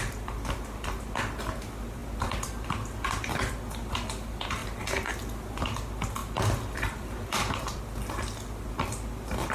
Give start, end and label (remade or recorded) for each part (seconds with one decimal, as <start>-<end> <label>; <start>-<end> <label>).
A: 0.0-2.0 recorded; 2.0-3.5 remade; 3.5-4.6 recorded; 4.6-5.6 remade; 5.6-6.2 recorded; 6.2-7.8 remade; 7.8-9.5 recorded